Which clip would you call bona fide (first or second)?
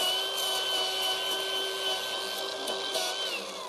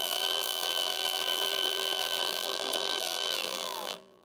first